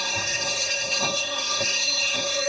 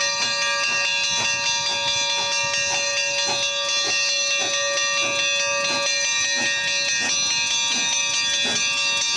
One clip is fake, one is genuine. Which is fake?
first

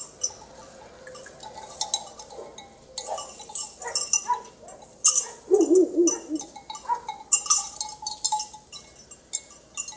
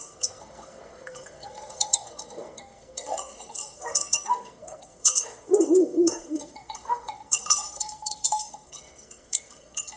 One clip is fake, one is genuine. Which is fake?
second